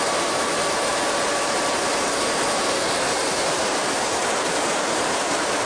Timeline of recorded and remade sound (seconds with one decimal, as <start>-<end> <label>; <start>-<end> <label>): 0.0-0.9 remade; 0.9-3.8 recorded; 3.8-5.7 remade